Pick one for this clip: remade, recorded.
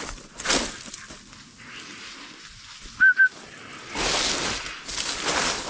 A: recorded